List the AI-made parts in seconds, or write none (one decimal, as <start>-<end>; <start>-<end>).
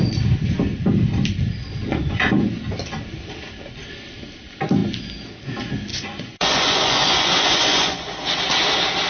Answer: 1.8-2.5; 5.9-8.1